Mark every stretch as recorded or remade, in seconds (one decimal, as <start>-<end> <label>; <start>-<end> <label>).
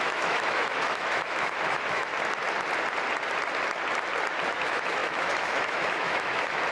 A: 0.0-2.1 remade; 2.1-4.5 recorded; 4.5-6.7 remade